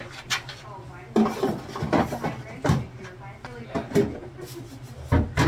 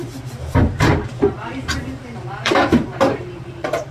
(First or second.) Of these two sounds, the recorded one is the first